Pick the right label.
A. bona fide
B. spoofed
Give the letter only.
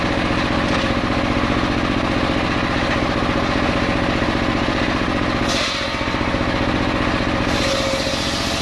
A